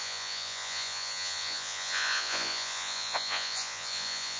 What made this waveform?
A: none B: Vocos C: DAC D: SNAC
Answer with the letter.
B